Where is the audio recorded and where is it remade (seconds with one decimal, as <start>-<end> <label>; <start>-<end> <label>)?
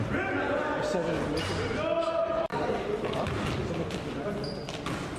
0.0-2.5 recorded; 2.5-3.4 remade; 3.4-5.2 recorded